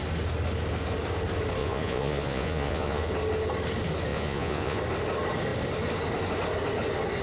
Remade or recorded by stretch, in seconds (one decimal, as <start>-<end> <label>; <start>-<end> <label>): 0.0-1.6 recorded; 1.6-3.1 remade; 3.1-4.1 recorded; 4.1-4.8 remade; 4.8-7.2 recorded